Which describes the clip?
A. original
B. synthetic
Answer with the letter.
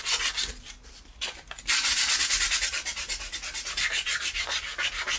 A